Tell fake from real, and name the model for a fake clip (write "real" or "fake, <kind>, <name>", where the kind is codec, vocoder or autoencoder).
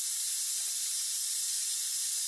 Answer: real